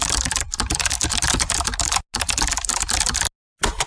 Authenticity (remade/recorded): recorded